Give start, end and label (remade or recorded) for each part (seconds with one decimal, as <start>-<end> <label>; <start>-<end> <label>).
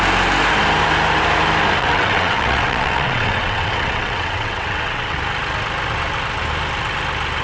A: 0.0-1.8 recorded; 1.8-5.2 remade; 5.2-7.4 recorded